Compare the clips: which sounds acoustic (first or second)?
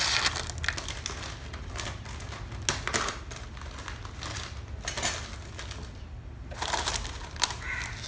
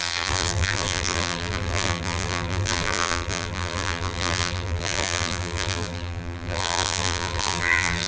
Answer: first